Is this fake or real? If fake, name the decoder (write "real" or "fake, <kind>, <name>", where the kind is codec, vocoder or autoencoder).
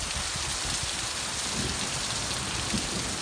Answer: real